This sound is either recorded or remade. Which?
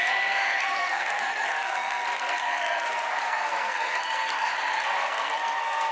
remade